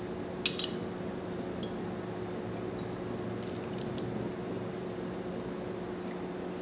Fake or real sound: real